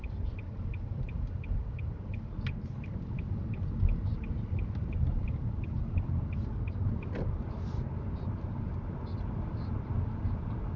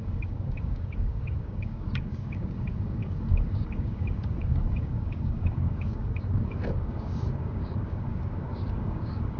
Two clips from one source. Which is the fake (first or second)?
second